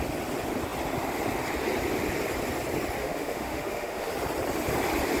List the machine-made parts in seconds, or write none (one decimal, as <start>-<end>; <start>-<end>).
3.0-4.1

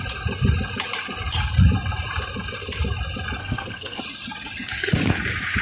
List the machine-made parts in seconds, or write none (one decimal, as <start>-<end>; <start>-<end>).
3.4-4.0

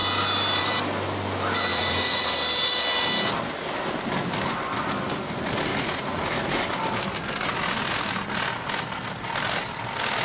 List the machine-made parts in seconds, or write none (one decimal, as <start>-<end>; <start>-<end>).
1.7-2.3; 5.7-6.6

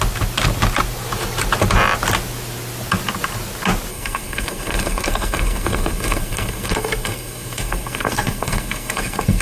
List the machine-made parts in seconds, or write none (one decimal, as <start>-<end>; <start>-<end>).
3.9-9.4

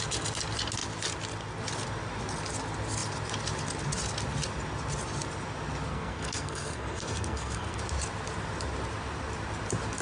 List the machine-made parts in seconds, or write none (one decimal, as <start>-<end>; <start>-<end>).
5.9-7.8

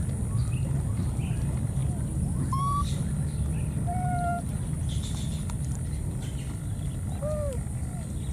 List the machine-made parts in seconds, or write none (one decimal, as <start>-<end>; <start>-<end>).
none

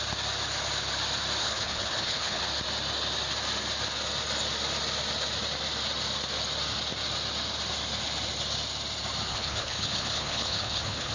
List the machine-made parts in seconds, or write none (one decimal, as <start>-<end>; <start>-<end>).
1.4-2.4; 9.3-11.1

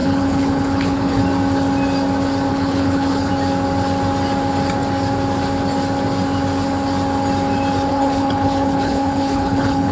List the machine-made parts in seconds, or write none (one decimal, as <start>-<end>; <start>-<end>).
0.0-1.2; 2.5-3.3; 7.9-9.9